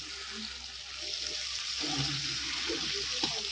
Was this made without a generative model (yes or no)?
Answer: yes